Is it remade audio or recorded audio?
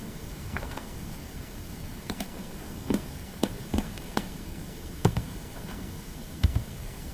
remade